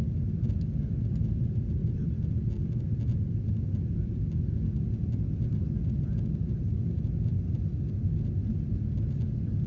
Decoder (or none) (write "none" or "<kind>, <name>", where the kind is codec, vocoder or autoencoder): none